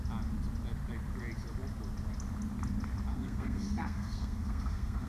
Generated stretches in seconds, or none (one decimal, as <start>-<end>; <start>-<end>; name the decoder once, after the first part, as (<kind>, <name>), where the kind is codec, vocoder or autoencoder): 3.1-5.1 (codec, SNAC)

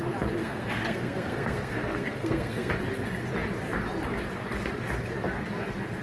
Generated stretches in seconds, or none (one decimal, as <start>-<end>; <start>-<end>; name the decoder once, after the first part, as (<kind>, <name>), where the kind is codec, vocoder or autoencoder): 0.4-2.7 (codec, SNAC)